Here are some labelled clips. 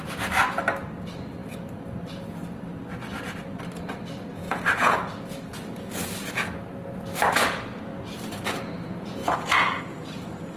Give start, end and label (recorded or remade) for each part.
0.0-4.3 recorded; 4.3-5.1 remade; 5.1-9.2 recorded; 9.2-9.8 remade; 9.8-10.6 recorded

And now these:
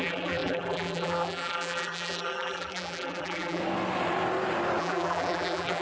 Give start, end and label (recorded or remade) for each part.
0.0-3.6 remade; 3.6-4.8 recorded; 4.8-5.8 remade

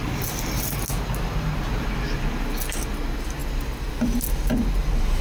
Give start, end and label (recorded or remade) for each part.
0.0-5.2 recorded

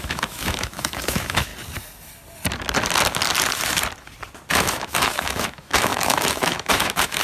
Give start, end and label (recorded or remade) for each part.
0.0-1.5 remade; 1.5-4.5 recorded; 4.5-7.2 remade

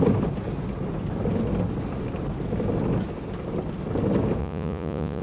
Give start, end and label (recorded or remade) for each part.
0.0-4.4 recorded; 4.4-5.2 remade

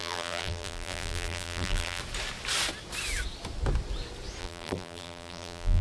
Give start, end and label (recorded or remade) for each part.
0.0-2.0 remade; 2.0-4.4 recorded; 4.4-5.8 remade